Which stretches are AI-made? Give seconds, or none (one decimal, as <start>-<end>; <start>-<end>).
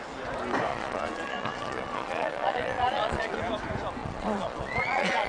0.7-3.4; 4.0-5.3